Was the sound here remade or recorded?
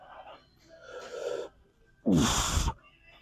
recorded